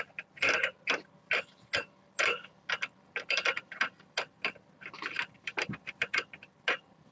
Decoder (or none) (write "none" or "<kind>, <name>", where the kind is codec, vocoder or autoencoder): none